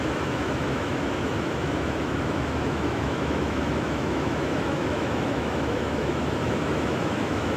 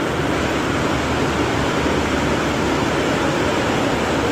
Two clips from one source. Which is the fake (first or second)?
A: first